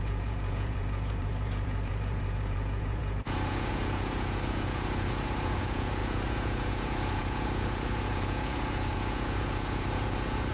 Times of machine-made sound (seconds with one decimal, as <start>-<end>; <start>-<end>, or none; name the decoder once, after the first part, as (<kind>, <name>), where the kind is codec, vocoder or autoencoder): 0.0-10.5 (vocoder, Vocos)